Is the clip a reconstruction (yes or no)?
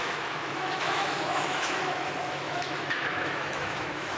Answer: yes